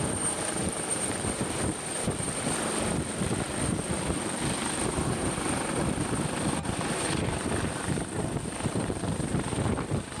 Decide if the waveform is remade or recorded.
remade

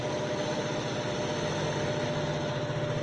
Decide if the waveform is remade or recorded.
recorded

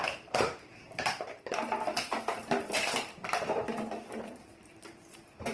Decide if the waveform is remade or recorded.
remade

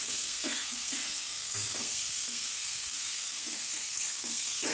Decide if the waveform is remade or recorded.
remade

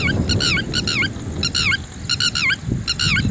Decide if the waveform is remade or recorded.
recorded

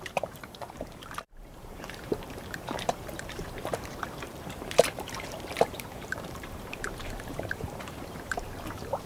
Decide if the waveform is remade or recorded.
remade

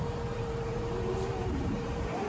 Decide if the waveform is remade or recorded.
remade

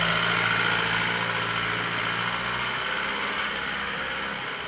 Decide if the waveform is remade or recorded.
recorded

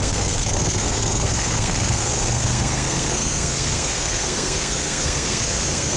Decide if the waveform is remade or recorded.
remade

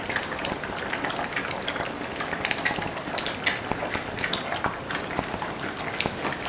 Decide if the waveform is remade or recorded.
recorded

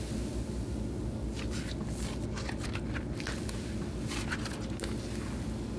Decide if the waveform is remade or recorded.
recorded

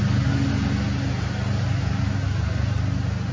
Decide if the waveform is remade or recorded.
recorded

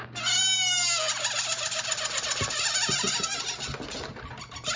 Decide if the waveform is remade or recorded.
recorded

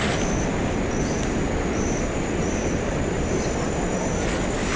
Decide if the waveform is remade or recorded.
recorded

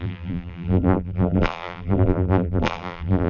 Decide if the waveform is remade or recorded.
remade